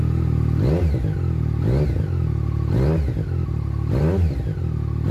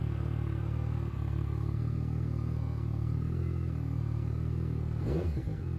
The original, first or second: first